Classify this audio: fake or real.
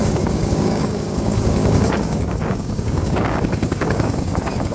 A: fake